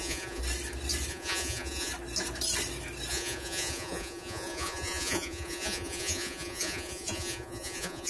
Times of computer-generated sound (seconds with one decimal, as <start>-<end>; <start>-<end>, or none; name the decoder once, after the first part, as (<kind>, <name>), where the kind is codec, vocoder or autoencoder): 0.0-0.4 (vocoder, Vocos); 1.1-1.9; 3.1-8.1